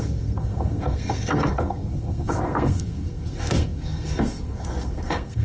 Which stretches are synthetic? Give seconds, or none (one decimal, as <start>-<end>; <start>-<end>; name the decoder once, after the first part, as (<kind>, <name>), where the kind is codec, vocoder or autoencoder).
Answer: 0.0-5.4 (codec, SNAC)